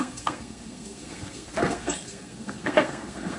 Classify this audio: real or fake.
fake